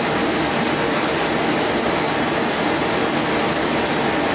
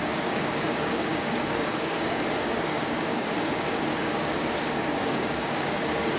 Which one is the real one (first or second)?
first